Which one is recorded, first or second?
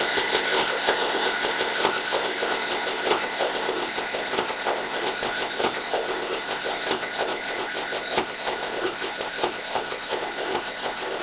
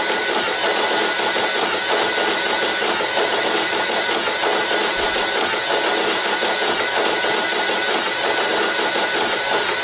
second